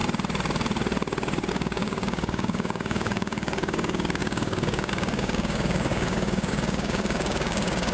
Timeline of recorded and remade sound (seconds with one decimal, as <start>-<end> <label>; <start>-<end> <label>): 0.0-1.5 recorded; 1.5-7.9 remade